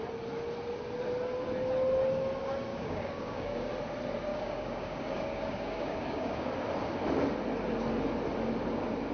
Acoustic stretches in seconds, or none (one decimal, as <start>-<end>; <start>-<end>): 0.0-2.7; 3.7-4.3; 6.5-9.1